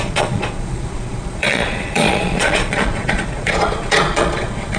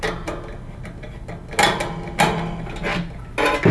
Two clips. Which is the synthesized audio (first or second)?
first